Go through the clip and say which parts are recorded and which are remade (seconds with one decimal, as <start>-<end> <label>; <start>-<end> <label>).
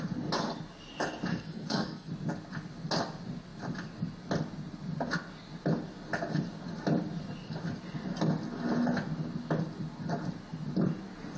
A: 0.0-1.3 recorded; 1.3-2.1 remade; 2.1-11.4 recorded